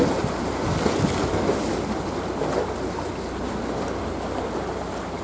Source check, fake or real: real